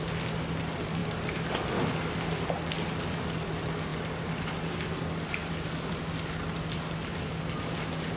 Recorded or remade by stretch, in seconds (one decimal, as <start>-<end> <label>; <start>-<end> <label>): 0.0-8.2 recorded